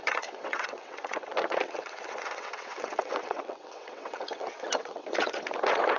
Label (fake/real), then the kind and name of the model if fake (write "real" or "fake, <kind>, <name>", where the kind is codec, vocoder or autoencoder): fake, vocoder, WaveNeXt